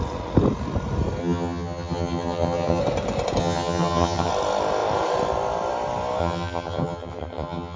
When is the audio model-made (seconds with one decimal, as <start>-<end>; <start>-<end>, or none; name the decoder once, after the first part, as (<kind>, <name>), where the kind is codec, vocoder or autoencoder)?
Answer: 1.2-2.8 (vocoder, HiFi-GAN); 3.4-4.3; 6.2-7.8